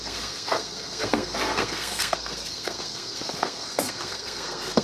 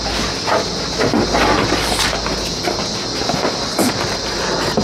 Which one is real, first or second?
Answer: second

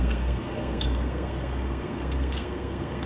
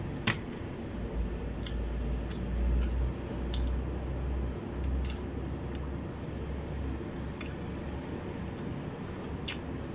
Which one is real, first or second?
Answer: second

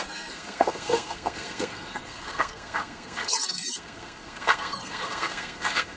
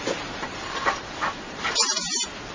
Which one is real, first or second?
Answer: second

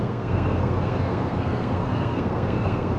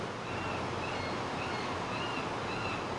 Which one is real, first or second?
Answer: second